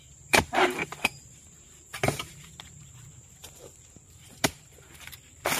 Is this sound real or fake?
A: fake